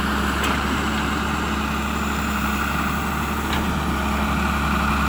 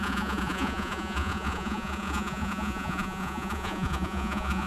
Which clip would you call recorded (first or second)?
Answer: first